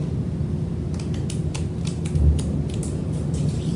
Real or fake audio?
real